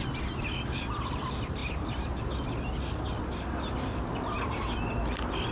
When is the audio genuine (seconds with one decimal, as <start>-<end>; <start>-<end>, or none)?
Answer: 0.0-1.6; 2.2-5.5